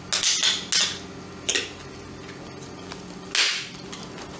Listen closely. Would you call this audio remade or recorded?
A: recorded